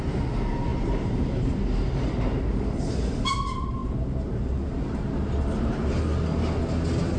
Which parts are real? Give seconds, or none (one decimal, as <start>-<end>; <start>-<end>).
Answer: 0.0-0.7; 1.5-2.3; 3.1-3.8; 6.0-7.2